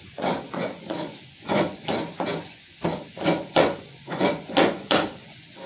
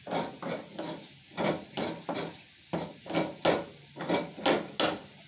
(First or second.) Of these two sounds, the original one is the second